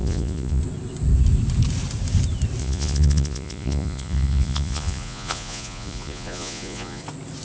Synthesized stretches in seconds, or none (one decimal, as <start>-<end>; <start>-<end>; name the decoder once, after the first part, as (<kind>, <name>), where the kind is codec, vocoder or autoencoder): 0.0-0.6 (vocoder, Vocos); 2.6-7.0